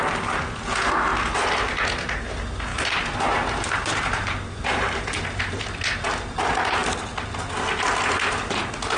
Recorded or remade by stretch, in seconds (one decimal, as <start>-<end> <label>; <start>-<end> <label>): 0.0-2.7 recorded; 2.7-5.4 remade; 5.4-9.0 recorded